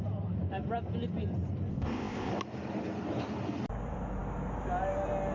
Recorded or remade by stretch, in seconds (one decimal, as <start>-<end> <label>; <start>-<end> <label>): 0.0-1.7 recorded; 1.7-2.3 remade; 2.3-5.3 recorded